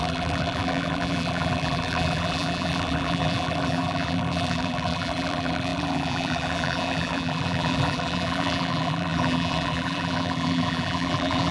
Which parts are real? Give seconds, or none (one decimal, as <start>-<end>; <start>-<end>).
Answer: none